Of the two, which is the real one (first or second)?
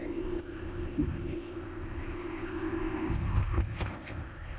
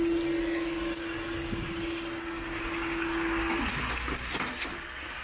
second